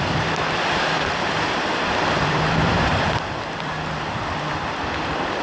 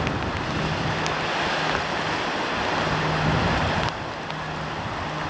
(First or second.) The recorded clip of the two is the second